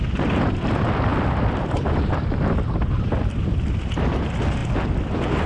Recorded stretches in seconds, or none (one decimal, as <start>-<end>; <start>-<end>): 0.0-1.1; 3.7-5.5